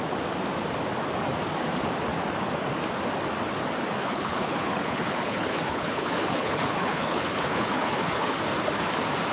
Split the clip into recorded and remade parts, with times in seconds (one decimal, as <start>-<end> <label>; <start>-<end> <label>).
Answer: 0.0-4.0 recorded; 4.0-8.4 remade; 8.4-9.3 recorded